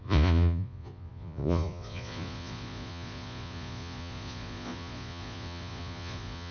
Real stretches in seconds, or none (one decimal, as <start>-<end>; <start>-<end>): none